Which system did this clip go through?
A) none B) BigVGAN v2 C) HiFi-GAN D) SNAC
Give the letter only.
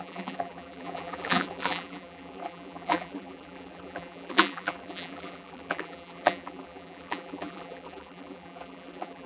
B